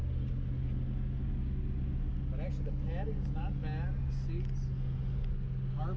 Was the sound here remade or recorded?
recorded